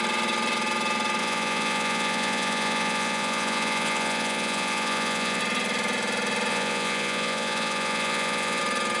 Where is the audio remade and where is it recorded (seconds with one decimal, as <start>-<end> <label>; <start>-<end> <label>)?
0.0-1.2 recorded; 1.2-5.4 remade; 5.4-6.5 recorded; 6.5-8.6 remade; 8.6-9.0 recorded